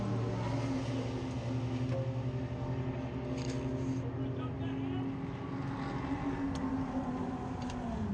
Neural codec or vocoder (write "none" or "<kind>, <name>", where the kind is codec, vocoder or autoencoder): none